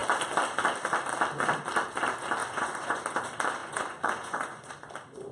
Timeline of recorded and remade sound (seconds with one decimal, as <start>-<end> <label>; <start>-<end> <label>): 0.0-2.4 recorded; 2.4-3.0 remade; 3.0-3.6 recorded; 3.6-4.7 remade; 4.7-5.3 recorded